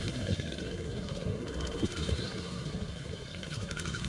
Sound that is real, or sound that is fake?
fake